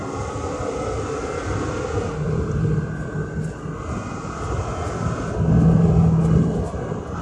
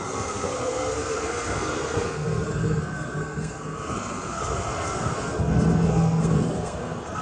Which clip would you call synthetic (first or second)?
second